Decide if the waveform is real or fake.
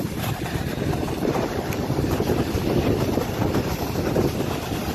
fake